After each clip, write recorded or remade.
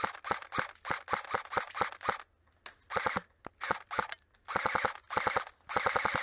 recorded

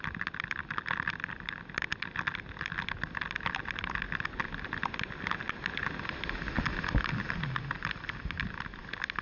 recorded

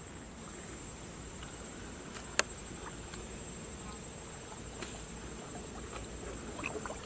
recorded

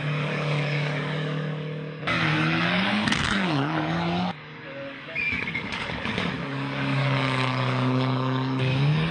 remade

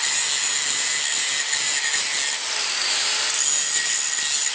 recorded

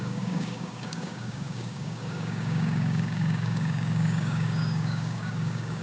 remade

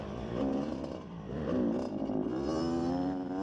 recorded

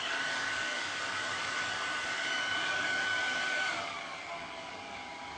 remade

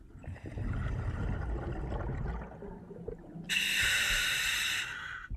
recorded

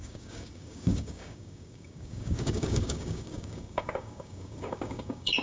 remade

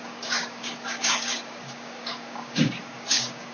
remade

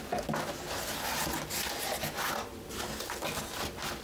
recorded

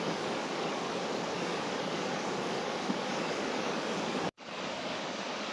remade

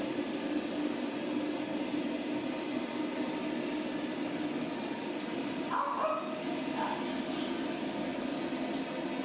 recorded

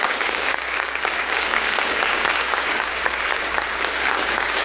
remade